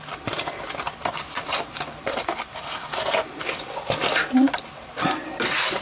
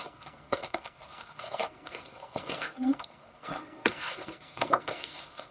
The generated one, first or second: second